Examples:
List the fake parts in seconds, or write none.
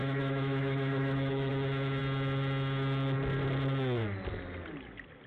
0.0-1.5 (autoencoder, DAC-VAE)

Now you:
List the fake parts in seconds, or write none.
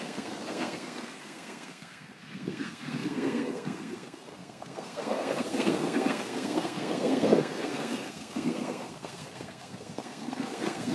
0.0-10.9 (codec, SNAC)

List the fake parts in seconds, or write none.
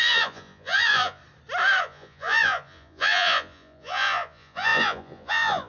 0.0-1.2 (vocoder, Vocos); 1.8-5.7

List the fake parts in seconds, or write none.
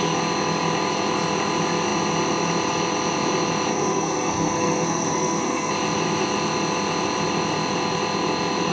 3.7-5.7 (codec, SNAC)